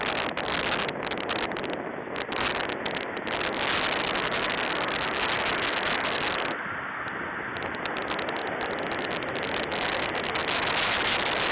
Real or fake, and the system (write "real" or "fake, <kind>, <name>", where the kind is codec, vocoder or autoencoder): real